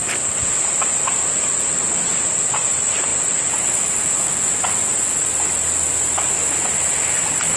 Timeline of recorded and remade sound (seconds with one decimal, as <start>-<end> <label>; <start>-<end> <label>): 0.0-7.6 recorded